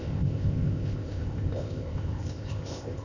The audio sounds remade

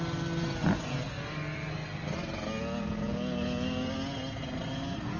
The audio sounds recorded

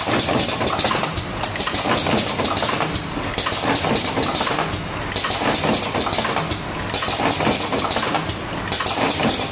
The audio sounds recorded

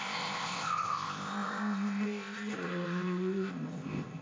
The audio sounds remade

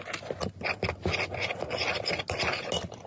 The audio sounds recorded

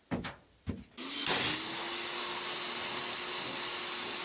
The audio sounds recorded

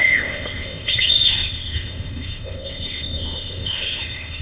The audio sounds remade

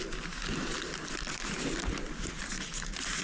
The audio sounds recorded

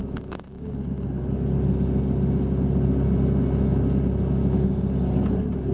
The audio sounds recorded